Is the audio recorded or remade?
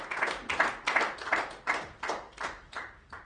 remade